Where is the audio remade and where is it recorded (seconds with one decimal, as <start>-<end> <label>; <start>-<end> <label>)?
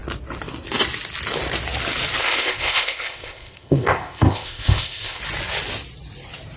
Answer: 0.0-2.2 recorded; 2.2-5.2 remade; 5.2-6.6 recorded